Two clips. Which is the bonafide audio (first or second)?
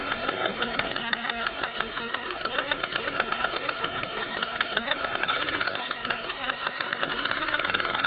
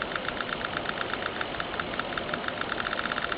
second